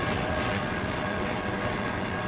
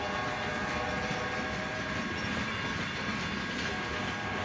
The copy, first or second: first